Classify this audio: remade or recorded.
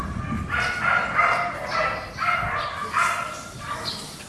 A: recorded